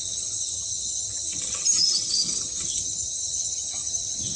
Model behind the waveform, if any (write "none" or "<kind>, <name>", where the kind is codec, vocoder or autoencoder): vocoder, HiFi-GAN